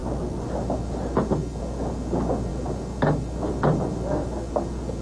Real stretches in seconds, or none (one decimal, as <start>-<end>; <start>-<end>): 0.0-5.0